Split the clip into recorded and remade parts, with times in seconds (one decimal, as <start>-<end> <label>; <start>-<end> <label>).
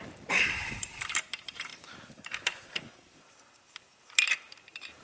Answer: 0.0-5.0 remade